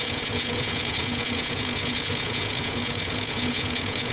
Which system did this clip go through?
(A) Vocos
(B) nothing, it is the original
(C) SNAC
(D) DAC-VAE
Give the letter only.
A